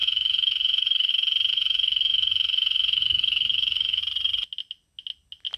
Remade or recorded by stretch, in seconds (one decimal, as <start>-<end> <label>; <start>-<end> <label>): 0.0-1.1 remade; 1.1-1.5 recorded; 1.5-4.0 remade; 4.0-5.6 recorded